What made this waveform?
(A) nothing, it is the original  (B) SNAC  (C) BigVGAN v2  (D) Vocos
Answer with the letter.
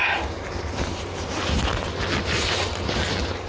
A